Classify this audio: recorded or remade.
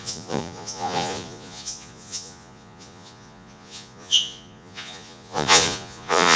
remade